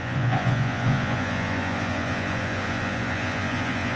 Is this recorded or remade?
remade